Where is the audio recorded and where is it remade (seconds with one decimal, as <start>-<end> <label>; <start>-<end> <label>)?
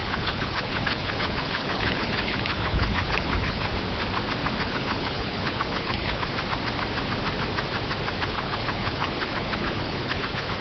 0.0-3.7 remade; 3.7-4.6 recorded; 4.6-6.3 remade; 6.3-8.2 recorded; 8.2-10.6 remade